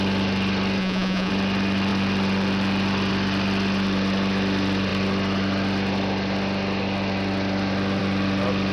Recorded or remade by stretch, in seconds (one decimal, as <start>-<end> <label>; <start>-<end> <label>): 0.0-0.8 recorded; 0.8-1.3 remade; 1.3-8.7 recorded